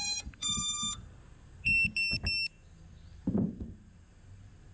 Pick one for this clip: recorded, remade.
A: recorded